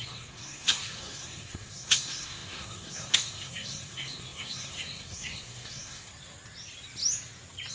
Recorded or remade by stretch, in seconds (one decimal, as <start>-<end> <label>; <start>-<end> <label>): 0.0-6.1 remade; 6.1-7.7 recorded